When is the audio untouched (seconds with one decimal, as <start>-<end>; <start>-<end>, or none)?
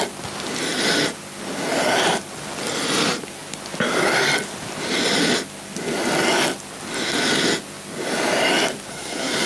0.0-8.9